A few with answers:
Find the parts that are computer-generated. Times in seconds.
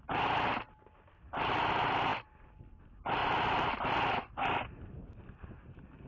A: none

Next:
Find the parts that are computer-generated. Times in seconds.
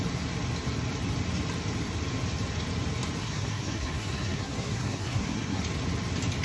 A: 3.2-5.6 (codec, SNAC)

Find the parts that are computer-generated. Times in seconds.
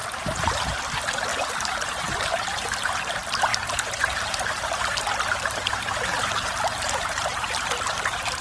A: 0.0-0.8 (vocoder, BigVGAN v2); 1.3-3.1; 3.5-8.4